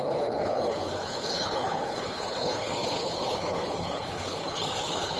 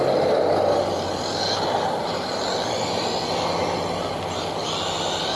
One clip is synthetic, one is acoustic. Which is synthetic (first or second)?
first